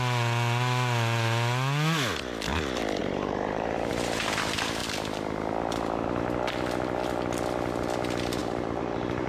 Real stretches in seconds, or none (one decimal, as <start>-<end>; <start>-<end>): 0.0-3.0; 3.9-8.4